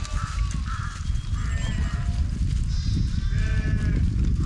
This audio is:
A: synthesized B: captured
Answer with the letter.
B